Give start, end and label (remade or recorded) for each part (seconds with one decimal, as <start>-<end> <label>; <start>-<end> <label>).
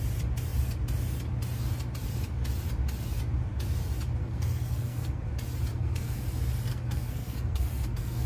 0.0-4.2 recorded; 4.2-5.3 remade; 5.3-5.7 recorded; 5.7-6.2 remade; 6.2-6.7 recorded; 6.7-8.3 remade